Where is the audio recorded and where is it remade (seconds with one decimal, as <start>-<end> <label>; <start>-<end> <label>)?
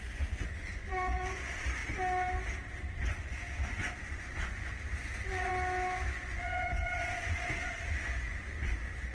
0.0-1.8 remade; 1.8-2.8 recorded; 2.8-5.5 remade; 5.5-6.1 recorded; 6.1-9.1 remade